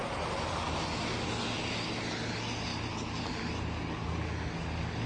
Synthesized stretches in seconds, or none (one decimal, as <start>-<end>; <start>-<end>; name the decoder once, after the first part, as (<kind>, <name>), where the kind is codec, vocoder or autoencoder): none